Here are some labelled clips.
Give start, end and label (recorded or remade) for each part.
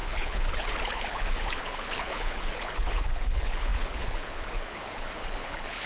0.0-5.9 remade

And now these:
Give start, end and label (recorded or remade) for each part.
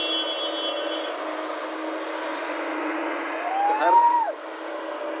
0.0-2.3 recorded; 2.3-3.5 remade; 3.5-5.2 recorded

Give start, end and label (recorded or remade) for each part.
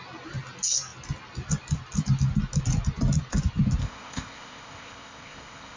0.0-3.8 recorded; 3.8-5.8 remade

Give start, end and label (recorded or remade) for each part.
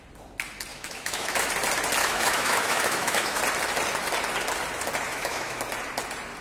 0.0-0.7 recorded; 0.7-1.5 remade; 1.5-2.0 recorded; 2.0-3.4 remade; 3.4-5.1 recorded; 5.1-5.6 remade; 5.6-6.4 recorded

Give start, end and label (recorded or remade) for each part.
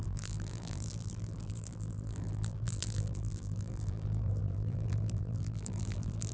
0.0-6.3 remade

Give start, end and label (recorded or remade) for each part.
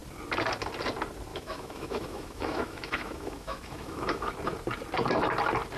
0.0-1.3 recorded; 1.3-4.3 remade; 4.3-5.8 recorded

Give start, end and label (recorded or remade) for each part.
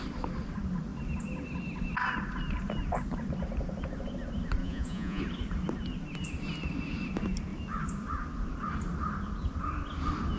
0.0-4.6 recorded; 4.6-5.2 remade; 5.2-10.4 recorded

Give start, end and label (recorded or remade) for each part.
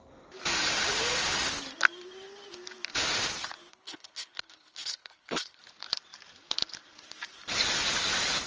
0.0-3.7 recorded; 3.7-5.6 remade; 5.6-8.5 recorded